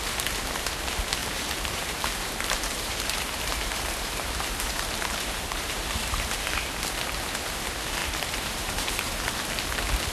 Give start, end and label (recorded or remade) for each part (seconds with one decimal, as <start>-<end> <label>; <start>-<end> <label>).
0.0-1.2 recorded; 1.2-6.4 remade; 6.4-8.0 recorded; 8.0-9.5 remade; 9.5-10.1 recorded

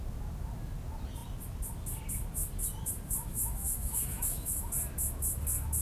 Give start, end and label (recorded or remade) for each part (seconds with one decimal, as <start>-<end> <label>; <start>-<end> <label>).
0.0-3.3 recorded; 3.3-4.6 remade; 4.6-5.8 recorded

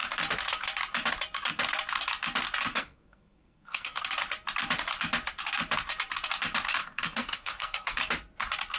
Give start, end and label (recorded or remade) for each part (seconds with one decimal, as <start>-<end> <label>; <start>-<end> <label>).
0.0-2.7 recorded; 2.7-4.0 remade; 4.0-6.8 recorded; 6.8-8.0 remade; 8.0-8.8 recorded

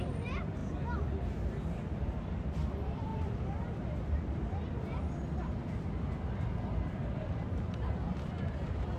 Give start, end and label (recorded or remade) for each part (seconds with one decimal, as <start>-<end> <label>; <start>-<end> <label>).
0.0-0.6 remade; 0.6-1.7 recorded; 1.7-9.0 remade